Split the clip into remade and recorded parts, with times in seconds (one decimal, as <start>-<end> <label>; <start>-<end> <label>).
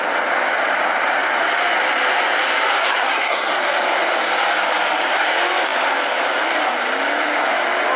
0.0-2.8 recorded; 2.8-3.6 remade; 3.6-8.0 recorded